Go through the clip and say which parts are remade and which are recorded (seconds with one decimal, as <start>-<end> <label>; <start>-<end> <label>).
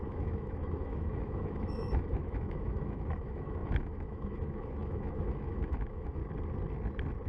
0.0-6.2 remade; 6.2-7.3 recorded